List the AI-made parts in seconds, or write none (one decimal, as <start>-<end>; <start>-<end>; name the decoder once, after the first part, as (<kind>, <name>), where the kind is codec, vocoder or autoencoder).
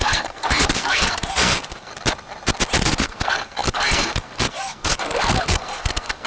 0.0-1.9 (codec, SNAC); 2.8-6.3